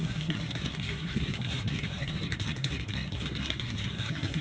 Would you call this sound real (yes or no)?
no